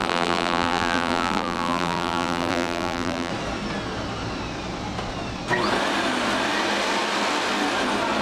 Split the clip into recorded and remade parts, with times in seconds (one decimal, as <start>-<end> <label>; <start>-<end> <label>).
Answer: 0.0-3.3 remade; 3.3-8.2 recorded